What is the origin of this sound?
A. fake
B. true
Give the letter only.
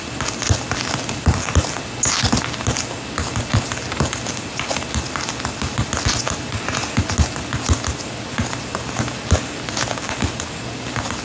B